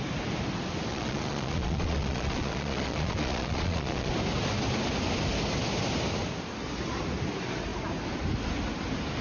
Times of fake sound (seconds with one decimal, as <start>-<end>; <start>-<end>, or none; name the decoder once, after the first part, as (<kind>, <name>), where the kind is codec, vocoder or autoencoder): 0.9-4.1 (vocoder, Vocos)